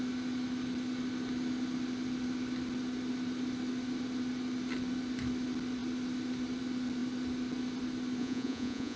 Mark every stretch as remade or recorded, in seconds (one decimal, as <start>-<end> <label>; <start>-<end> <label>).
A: 0.0-8.2 recorded; 8.2-9.0 remade